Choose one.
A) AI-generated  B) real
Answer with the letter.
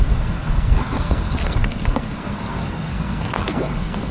A